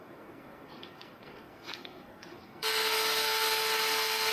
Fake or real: fake